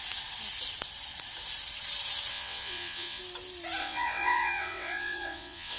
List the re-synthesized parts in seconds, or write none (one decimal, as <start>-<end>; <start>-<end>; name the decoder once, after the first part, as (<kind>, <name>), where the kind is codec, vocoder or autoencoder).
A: 2.3-3.2 (vocoder, WaveNeXt); 3.8-5.8